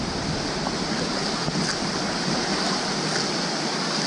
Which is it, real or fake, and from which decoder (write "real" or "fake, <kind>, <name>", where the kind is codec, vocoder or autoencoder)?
real